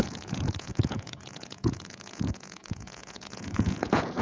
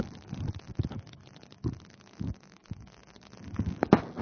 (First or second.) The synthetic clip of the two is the first